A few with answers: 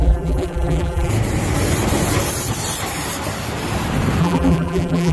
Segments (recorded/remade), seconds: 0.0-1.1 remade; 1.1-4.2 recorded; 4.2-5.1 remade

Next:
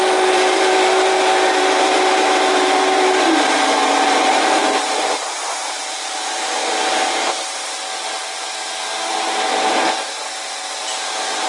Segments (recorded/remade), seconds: 0.0-6.6 remade; 6.6-9.1 recorded; 9.1-11.5 remade

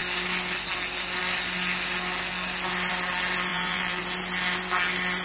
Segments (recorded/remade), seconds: 0.0-3.5 recorded; 3.5-4.0 remade; 4.0-5.2 recorded

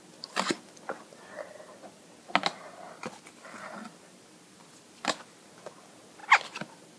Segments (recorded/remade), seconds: 0.0-7.0 recorded

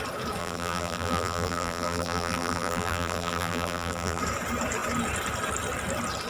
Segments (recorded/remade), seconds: 0.0-0.4 recorded; 0.4-4.2 remade; 4.2-6.3 recorded

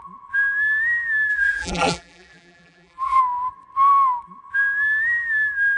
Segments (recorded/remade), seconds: 0.0-1.3 recorded; 1.3-3.2 remade; 3.2-5.8 recorded